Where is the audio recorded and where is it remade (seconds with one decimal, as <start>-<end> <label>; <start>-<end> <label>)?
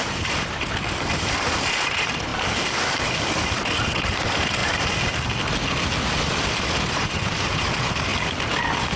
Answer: 0.0-2.3 remade; 2.3-3.4 recorded; 3.4-4.6 remade; 4.6-6.6 recorded; 6.6-8.1 remade; 8.1-9.0 recorded